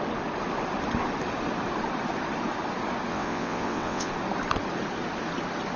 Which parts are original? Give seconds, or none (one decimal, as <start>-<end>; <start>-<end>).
0.0-3.1; 4.1-5.8